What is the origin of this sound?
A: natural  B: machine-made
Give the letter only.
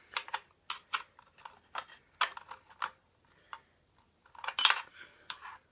A